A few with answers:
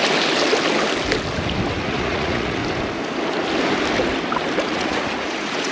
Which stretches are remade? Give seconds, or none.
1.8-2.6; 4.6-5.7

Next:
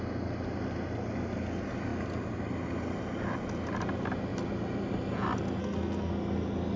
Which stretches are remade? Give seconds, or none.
5.6-6.1

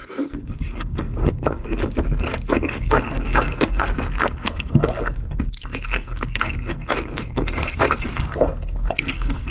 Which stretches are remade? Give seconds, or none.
0.0-1.8; 2.5-9.5

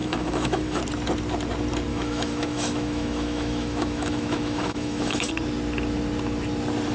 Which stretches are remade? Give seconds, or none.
0.0-0.8; 1.9-5.3

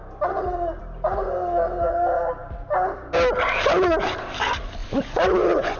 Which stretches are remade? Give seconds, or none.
4.8-5.8

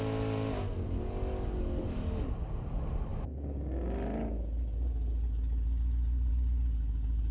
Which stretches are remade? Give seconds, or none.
none

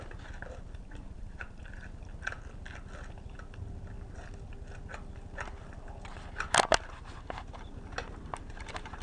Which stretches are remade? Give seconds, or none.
0.8-1.6